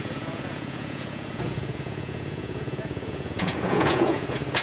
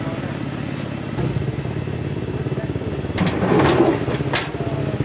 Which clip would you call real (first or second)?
second